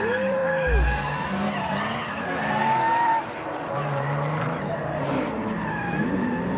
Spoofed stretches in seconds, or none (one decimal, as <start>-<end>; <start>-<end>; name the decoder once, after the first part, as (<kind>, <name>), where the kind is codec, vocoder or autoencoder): 0.0-0.4 (vocoder, BigVGAN v2); 4.4-6.6